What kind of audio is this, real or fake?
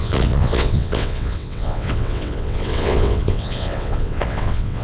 fake